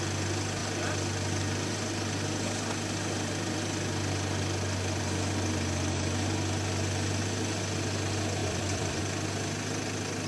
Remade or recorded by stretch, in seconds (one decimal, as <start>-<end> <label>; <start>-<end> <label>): 0.0-8.4 recorded; 8.4-9.0 remade; 9.0-10.3 recorded